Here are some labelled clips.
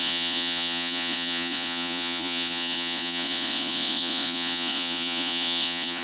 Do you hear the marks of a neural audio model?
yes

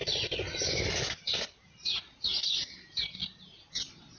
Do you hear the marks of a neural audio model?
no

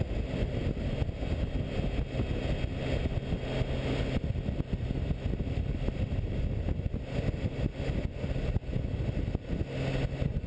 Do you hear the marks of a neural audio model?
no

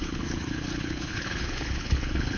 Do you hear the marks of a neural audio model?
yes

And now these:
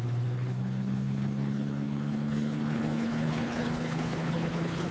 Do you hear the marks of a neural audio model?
yes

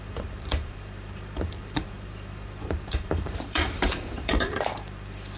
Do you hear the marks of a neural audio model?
yes